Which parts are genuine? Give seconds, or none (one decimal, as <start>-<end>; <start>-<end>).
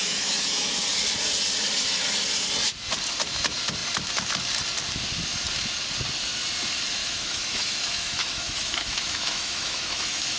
0.8-7.0